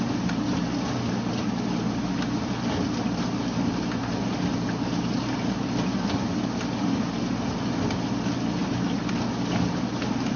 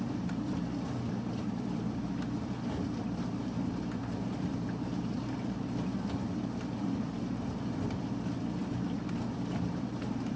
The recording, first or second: first